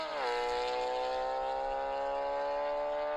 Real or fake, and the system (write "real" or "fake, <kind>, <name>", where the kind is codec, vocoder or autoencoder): real